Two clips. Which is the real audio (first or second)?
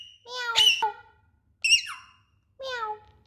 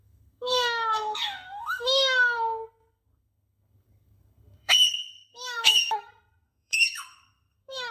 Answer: first